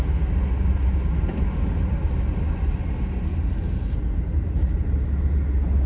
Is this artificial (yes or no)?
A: no